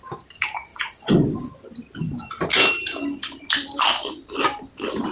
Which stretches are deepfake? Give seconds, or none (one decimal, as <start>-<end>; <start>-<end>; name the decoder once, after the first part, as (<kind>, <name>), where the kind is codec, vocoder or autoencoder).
none